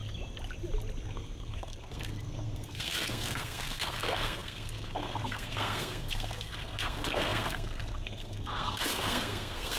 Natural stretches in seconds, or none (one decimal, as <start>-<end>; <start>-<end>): 0.0-1.0